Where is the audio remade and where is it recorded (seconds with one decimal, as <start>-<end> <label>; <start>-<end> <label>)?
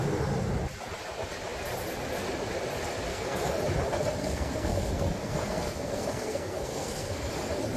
0.0-3.1 recorded; 3.1-3.6 remade; 3.6-4.2 recorded; 4.2-7.3 remade; 7.3-7.8 recorded